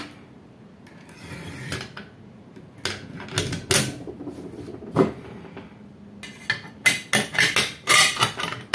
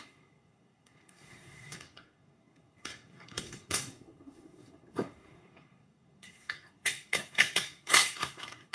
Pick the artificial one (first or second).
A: second